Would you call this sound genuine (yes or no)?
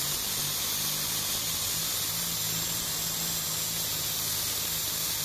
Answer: yes